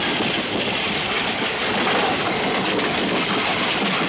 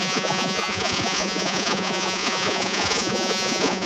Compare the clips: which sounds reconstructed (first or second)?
second